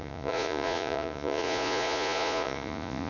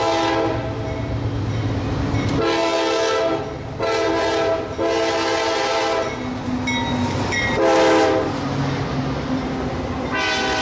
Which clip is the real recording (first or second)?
second